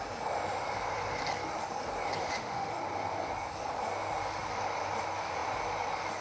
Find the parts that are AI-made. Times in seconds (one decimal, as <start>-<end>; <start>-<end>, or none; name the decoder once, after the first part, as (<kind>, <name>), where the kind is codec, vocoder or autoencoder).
2.2-2.7 (autoencoder, DAC-VAE)

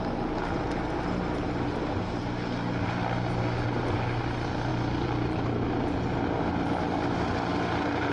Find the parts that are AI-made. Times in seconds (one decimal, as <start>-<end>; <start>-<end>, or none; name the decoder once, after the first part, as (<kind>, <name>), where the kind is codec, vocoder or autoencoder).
none

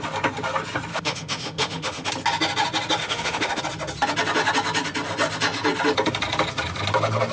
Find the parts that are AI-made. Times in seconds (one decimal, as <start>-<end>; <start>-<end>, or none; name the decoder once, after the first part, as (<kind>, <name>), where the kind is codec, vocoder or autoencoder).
0.9-2.1 (autoencoder, DAC-VAE); 3.0-3.6

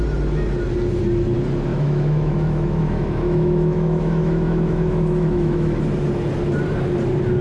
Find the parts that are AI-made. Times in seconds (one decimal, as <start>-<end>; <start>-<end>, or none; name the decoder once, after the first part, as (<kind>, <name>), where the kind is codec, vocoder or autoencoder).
1.7-5.8 (autoencoder, DAC-VAE)

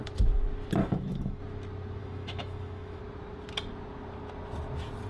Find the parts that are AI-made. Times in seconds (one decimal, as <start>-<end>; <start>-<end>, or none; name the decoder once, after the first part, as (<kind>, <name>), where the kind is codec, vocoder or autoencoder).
0.8-1.4 (autoencoder, DAC-VAE); 2.0-3.0

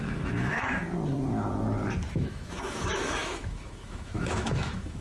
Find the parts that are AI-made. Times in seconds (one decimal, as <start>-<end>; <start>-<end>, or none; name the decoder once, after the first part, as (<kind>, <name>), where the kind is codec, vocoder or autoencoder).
0.0-0.8 (autoencoder, DAC-VAE); 2.1-5.0

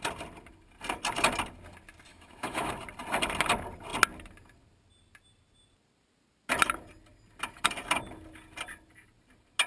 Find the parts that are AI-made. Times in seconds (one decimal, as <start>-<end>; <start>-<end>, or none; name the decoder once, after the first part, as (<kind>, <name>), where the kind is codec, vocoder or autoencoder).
2.1-2.7 (autoencoder, DAC-VAE)

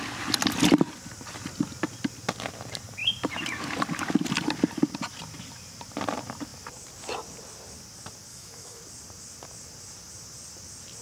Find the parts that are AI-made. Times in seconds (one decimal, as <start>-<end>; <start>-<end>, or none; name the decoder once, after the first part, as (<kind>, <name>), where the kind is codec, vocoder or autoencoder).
8.3-8.8 (autoencoder, DAC-VAE)